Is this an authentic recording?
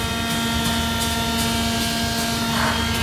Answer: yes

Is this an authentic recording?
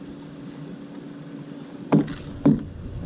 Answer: yes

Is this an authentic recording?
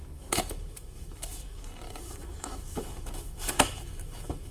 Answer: no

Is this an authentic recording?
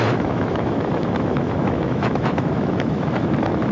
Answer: no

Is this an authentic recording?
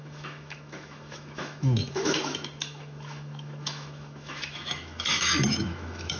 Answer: no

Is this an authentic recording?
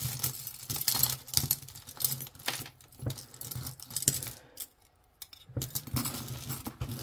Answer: yes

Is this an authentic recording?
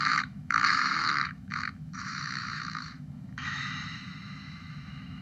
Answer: no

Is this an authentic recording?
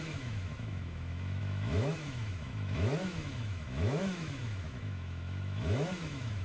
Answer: no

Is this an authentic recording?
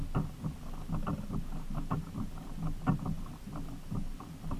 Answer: yes